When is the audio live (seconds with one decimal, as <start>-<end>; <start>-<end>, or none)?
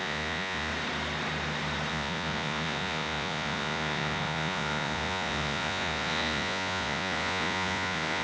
0.7-1.9